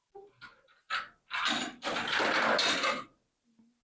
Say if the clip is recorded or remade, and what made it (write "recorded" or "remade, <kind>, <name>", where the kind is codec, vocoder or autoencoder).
recorded